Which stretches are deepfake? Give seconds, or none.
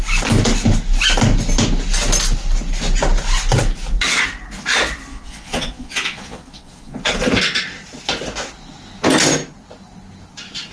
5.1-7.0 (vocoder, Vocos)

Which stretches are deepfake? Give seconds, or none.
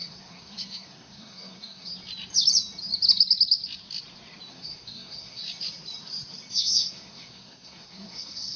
0.0-1.9 (codec, SNAC); 4.5-5.4; 6.5-8.6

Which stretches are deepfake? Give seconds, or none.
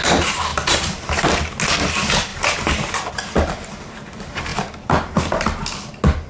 none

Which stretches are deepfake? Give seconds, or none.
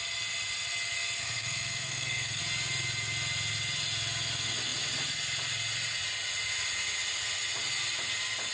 1.2-2.4 (codec, SNAC)